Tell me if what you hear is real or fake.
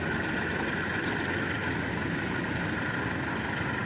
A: real